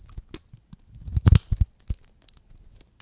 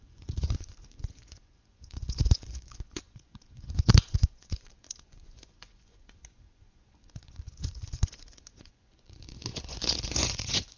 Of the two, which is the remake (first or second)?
second